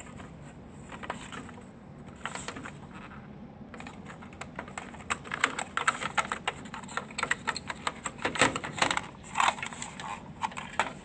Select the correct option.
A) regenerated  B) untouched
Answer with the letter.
B